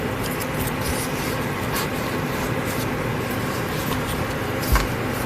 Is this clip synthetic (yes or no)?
no